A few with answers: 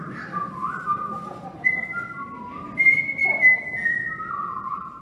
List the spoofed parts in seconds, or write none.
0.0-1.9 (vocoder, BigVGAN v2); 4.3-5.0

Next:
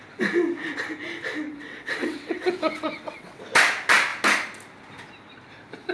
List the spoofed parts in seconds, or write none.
1.5-3.4 (vocoder, WaveNeXt)

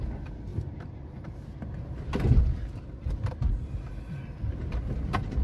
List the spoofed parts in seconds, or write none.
none

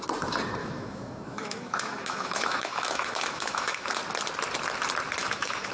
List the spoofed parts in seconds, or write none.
0.6-4.0 (autoencoder, DAC-VAE); 5.2-5.7